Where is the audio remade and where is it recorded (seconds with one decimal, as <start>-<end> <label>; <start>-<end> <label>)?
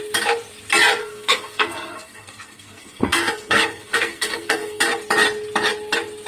0.0-1.0 recorded; 1.0-4.8 remade; 4.8-6.3 recorded